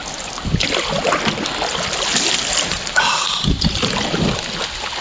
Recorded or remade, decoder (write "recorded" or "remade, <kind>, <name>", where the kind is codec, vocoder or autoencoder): recorded